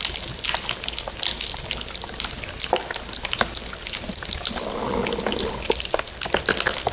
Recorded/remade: recorded